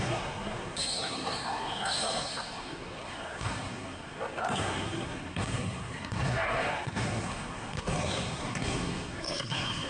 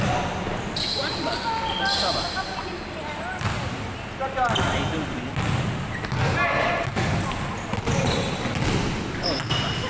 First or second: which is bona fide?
second